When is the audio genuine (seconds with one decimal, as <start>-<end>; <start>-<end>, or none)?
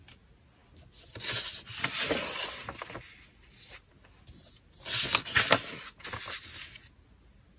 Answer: 0.0-7.6